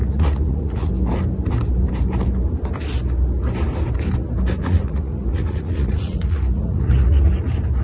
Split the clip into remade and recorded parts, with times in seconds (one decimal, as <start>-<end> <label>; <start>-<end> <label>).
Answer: 0.0-0.9 remade; 0.9-4.6 recorded; 4.6-7.3 remade; 7.3-7.8 recorded